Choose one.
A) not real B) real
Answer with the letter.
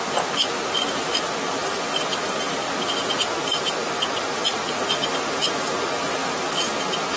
B